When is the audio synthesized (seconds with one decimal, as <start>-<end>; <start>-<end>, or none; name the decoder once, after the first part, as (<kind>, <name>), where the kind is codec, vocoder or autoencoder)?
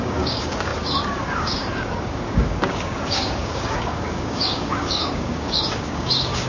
0.0-6.5 (codec, DAC)